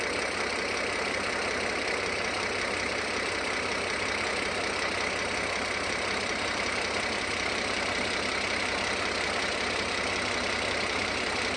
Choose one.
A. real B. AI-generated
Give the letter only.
A